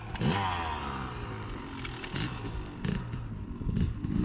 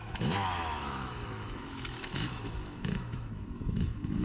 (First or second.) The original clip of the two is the first